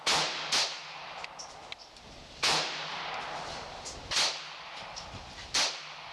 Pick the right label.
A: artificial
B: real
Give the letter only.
B